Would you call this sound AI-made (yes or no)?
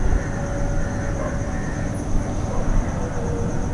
no